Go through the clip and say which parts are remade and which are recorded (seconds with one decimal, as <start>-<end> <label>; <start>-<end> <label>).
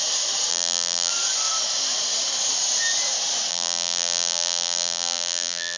0.0-0.5 recorded; 0.5-1.1 remade; 1.1-3.5 recorded; 3.5-5.8 remade